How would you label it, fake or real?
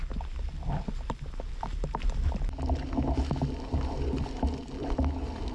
real